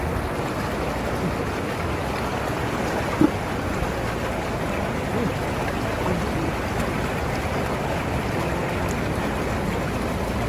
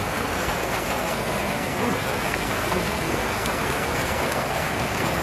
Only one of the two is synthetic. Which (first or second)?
second